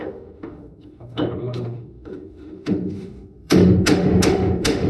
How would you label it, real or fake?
fake